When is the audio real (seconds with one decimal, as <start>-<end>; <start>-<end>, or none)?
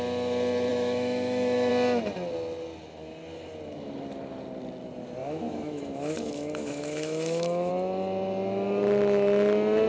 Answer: 0.0-0.7; 1.7-5.2; 7.7-9.9